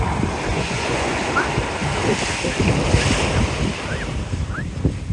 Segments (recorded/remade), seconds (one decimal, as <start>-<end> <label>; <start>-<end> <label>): 0.0-0.5 recorded; 0.5-1.2 remade; 1.2-5.1 recorded